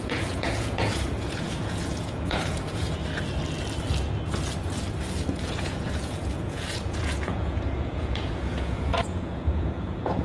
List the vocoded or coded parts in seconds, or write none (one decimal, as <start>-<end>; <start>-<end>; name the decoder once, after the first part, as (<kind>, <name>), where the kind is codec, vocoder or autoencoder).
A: 0.0-3.0 (vocoder, Vocos); 5.3-10.2